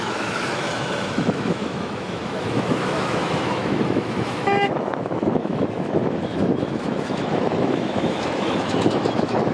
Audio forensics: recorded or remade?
remade